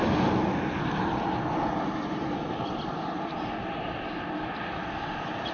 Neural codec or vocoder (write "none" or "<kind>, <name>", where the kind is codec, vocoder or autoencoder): none